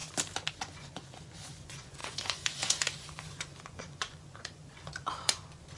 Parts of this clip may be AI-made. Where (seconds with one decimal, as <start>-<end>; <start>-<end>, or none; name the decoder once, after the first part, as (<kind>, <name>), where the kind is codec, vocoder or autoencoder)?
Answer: 0.5-5.8 (vocoder, Vocos)